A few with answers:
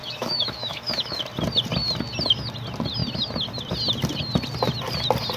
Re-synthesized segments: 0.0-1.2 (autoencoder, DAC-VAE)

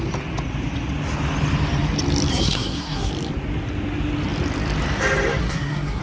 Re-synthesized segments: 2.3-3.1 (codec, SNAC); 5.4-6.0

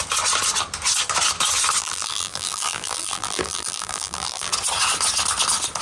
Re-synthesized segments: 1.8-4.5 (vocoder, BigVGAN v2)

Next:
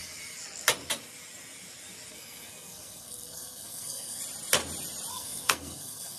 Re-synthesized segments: 2.1-4.2 (codec, SNAC); 5.1-6.2

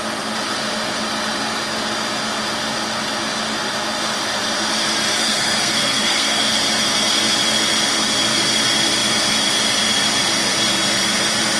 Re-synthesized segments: 5.2-6.4 (codec, SNAC)

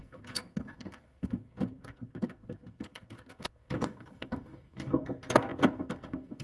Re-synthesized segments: 0.0-6.4 (codec, SNAC)

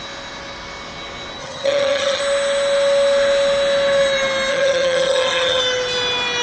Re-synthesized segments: 1.4-2.2 (vocoder, HiFi-GAN); 4.5-5.6

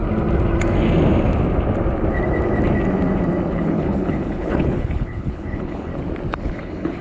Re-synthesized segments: 3.5-5.9 (codec, HILCodec); 6.4-7.0